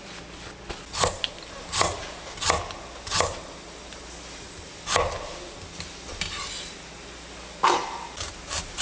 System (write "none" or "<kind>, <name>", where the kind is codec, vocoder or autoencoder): none